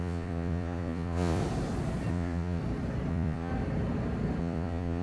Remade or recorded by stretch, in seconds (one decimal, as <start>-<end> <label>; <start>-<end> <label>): 0.0-1.4 remade; 1.4-2.1 recorded; 2.1-2.6 remade; 2.6-3.1 recorded; 3.1-3.5 remade; 3.5-4.4 recorded; 4.4-5.0 remade